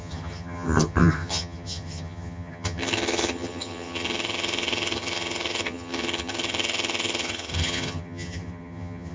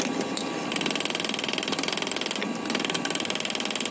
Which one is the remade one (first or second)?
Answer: first